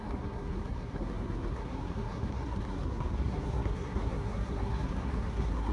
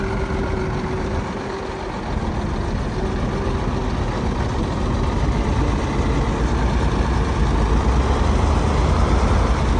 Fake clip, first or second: first